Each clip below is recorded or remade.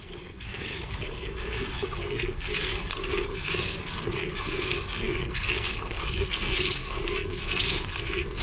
remade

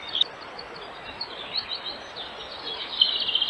recorded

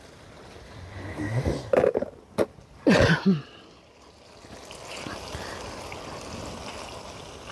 recorded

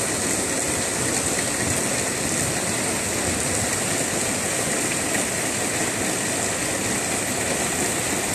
recorded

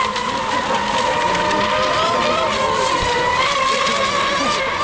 recorded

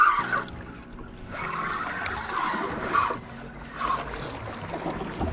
recorded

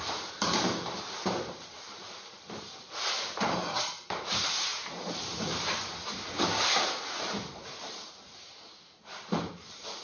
remade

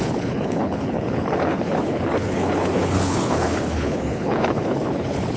remade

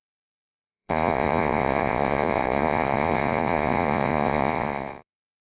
remade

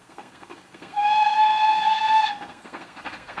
remade